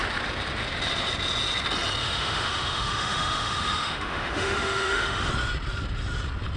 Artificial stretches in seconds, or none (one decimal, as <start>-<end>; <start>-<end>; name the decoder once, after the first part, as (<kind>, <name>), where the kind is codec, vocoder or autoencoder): 2.0-5.3 (autoencoder, DAC-VAE)